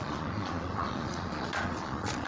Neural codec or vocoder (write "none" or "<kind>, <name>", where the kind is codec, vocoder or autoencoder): vocoder, Vocos